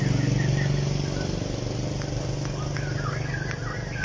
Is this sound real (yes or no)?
yes